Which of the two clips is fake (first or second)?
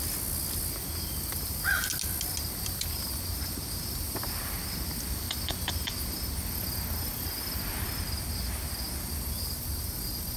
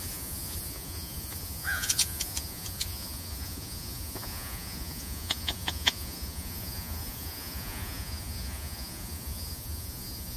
second